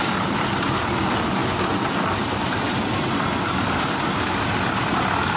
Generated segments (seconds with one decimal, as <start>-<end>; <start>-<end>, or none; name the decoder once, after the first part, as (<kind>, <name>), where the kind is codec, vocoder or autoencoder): none